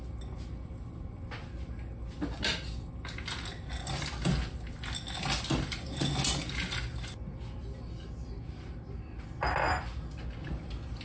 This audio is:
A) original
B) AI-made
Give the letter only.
A